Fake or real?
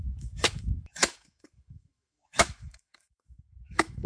fake